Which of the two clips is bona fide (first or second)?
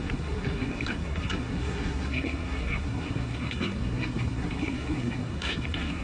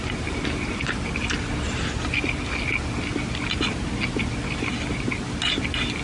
second